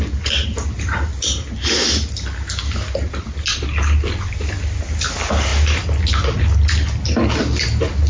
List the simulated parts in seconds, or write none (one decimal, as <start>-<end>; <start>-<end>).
none